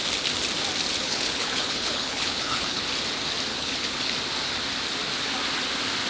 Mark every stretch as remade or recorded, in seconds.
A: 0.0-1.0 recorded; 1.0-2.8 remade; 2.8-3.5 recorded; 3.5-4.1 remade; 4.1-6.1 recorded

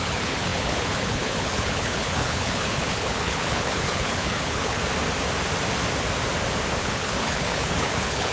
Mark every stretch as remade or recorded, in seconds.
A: 0.0-4.8 remade; 4.8-6.8 recorded; 6.8-8.3 remade

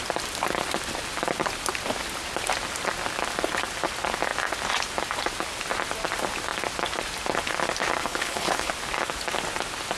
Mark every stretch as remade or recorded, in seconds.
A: 0.0-8.0 recorded; 8.0-8.7 remade; 8.7-10.0 recorded